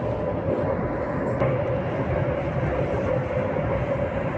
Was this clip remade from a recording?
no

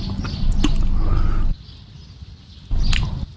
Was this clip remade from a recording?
no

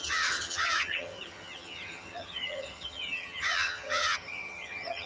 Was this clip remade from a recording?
yes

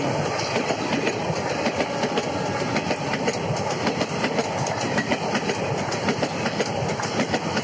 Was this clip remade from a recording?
no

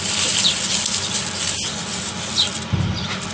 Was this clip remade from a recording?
no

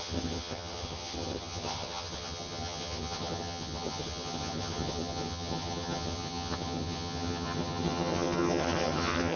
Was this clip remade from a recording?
yes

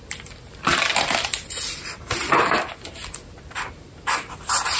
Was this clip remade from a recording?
no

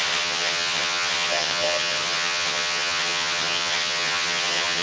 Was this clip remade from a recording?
yes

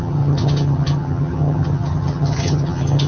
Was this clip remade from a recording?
yes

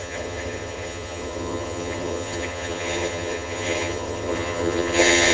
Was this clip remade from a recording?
yes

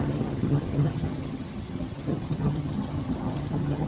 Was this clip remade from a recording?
yes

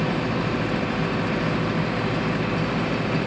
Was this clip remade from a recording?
no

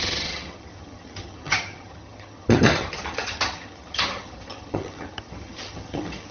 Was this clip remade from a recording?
yes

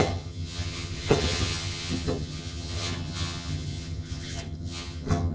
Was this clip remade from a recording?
yes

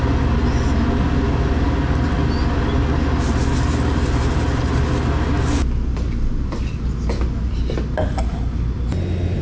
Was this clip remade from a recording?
no